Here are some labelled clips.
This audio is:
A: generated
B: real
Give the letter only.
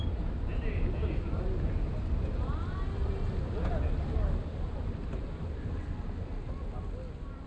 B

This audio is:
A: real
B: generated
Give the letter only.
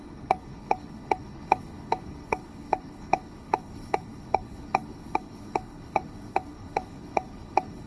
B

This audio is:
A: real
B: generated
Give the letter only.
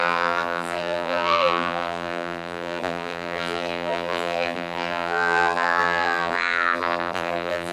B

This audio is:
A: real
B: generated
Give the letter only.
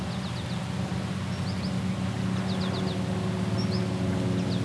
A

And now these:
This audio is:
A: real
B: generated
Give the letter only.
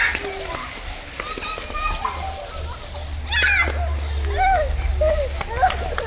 A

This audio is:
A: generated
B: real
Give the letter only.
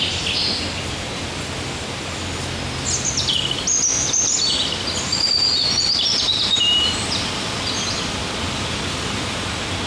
B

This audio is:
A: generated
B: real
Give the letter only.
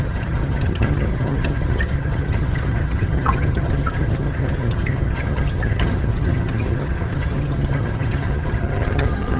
A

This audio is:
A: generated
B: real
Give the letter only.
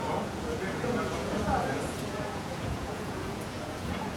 A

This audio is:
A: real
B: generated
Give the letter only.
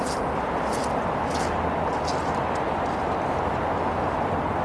A